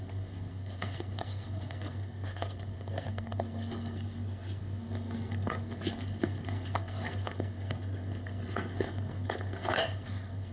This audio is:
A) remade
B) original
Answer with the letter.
A